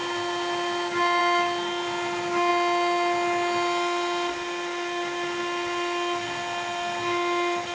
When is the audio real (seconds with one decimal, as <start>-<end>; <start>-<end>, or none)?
0.0-7.7